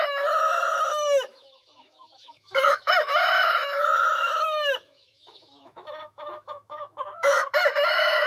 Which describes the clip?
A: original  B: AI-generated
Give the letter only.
B